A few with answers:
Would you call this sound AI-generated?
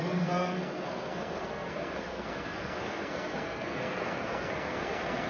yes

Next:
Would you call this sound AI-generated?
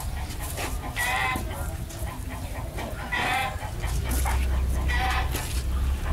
no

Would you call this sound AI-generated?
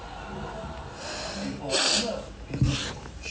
no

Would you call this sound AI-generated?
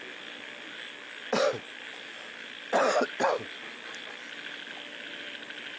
no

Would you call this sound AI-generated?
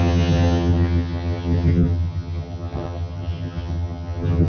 yes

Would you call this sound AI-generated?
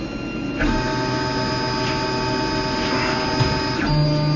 no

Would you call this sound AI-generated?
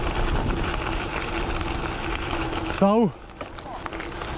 no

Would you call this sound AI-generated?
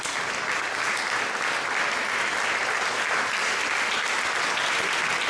no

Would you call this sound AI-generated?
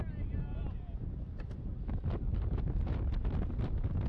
no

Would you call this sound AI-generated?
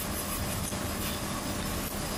no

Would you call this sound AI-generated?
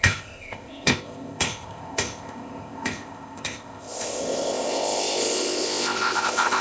yes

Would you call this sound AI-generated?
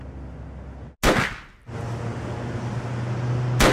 no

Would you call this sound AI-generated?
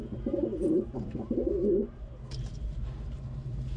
yes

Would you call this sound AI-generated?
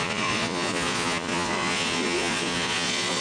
yes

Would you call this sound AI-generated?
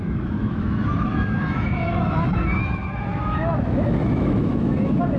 yes